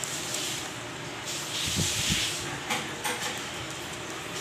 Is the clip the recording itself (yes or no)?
yes